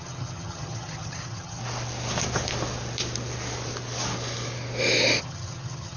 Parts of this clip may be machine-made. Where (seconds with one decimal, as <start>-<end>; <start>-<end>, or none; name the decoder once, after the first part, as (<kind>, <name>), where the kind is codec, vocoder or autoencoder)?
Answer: 0.0-1.6 (vocoder, HiFi-GAN); 5.2-6.0